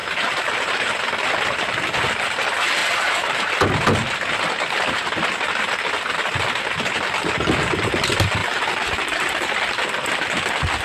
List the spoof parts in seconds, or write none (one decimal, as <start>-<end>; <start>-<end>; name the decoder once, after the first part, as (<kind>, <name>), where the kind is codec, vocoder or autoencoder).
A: 0.0-0.9 (vocoder, BigVGAN v2); 2.8-3.5; 8.4-9.5